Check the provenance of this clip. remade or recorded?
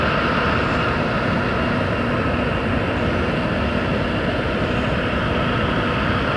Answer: recorded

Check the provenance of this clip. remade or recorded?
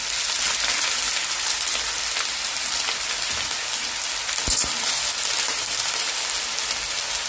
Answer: recorded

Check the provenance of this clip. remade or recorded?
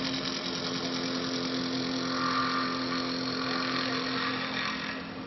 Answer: recorded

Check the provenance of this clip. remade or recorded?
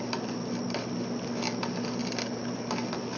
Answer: recorded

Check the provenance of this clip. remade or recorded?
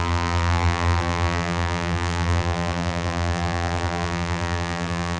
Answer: remade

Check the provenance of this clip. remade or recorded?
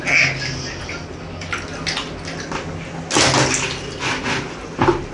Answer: recorded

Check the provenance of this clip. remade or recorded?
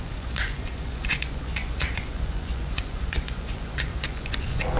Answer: remade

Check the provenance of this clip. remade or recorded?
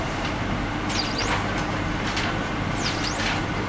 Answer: remade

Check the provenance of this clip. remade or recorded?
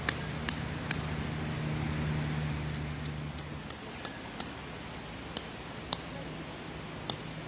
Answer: recorded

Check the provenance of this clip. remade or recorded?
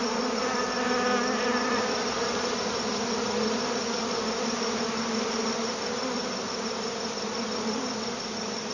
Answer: recorded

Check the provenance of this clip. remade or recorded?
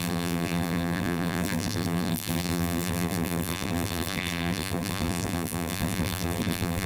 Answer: remade